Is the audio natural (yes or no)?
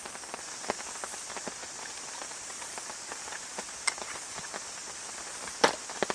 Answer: yes